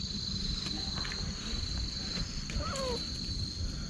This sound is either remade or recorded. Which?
recorded